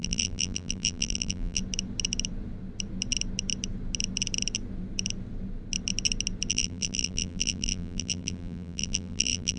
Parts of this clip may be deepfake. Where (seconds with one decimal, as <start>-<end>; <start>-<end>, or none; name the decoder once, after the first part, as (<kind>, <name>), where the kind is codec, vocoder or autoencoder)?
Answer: 0.0-1.6 (vocoder, BigVGAN v2); 6.5-9.6